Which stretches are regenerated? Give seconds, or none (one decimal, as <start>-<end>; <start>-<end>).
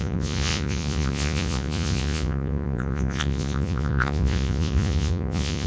0.0-5.7